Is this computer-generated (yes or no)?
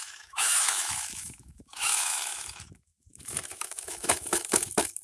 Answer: yes